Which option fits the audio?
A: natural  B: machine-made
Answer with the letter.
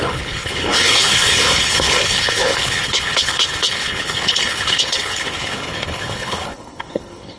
B